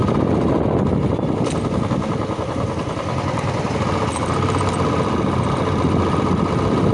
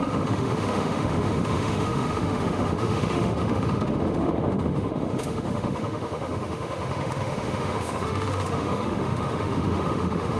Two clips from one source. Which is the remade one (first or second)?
second